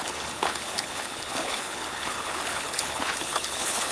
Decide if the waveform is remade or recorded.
remade